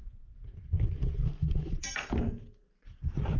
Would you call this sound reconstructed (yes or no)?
no